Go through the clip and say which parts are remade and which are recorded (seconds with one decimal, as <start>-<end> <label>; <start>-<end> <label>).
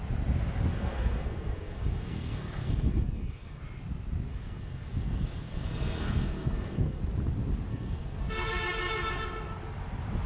0.0-0.7 recorded; 0.7-3.6 remade; 3.6-4.3 recorded; 4.3-7.0 remade; 7.0-7.7 recorded; 7.7-8.6 remade; 8.6-10.3 recorded